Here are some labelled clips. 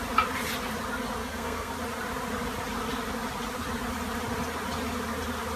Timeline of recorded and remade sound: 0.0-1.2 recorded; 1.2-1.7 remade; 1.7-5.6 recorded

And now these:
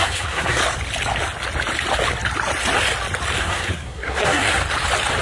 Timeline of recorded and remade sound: 0.0-0.6 remade; 0.6-3.4 recorded; 3.4-4.6 remade; 4.6-5.2 recorded

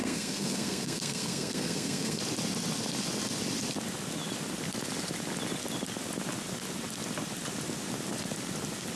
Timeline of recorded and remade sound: 0.0-2.2 remade; 2.2-9.0 recorded

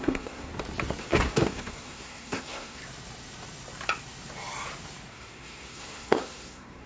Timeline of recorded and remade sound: 0.0-0.5 remade; 0.5-1.0 recorded; 1.0-2.8 remade; 2.8-5.1 recorded; 5.1-6.9 remade